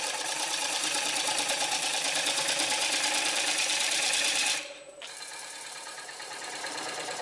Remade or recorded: remade